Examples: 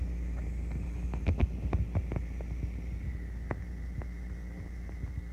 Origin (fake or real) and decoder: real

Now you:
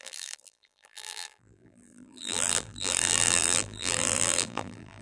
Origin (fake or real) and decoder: fake, vocoder, BigVGAN v2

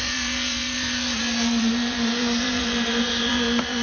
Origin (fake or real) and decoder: fake, vocoder, BigVGAN v2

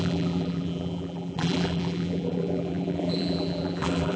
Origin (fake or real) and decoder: fake, vocoder, BigVGAN v2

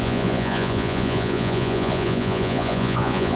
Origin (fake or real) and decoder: fake, vocoder, Vocos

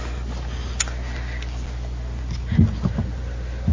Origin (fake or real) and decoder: real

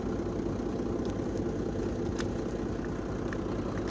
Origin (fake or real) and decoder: real